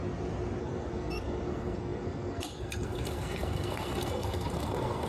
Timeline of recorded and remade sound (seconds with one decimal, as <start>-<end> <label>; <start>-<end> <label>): 0.0-0.6 recorded; 0.6-5.1 remade